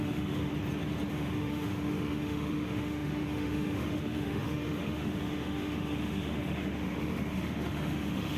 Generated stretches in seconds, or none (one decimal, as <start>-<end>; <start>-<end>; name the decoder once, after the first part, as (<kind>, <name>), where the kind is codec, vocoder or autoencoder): 0.0-0.5 (autoencoder, DAC-VAE); 1.1-8.4